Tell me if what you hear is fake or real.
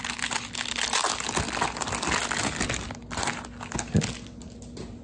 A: real